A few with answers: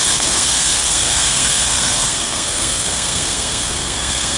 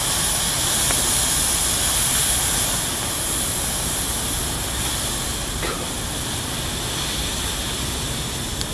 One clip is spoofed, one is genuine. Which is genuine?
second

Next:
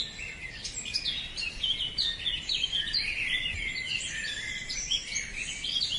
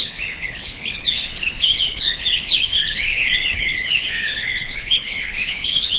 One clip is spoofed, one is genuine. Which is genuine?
first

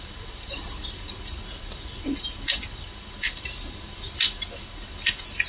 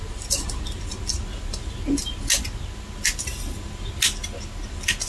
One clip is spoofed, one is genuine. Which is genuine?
second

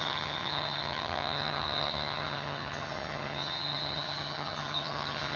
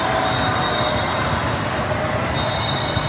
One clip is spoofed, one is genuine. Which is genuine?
second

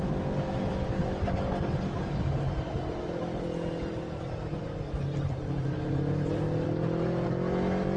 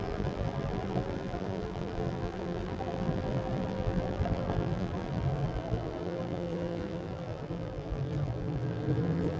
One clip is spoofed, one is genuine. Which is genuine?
first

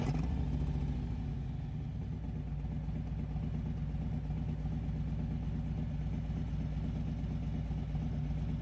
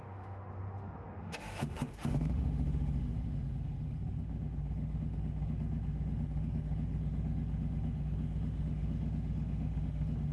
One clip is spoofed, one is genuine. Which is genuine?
first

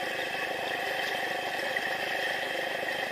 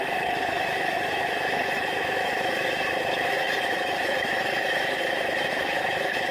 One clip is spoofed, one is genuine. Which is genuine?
first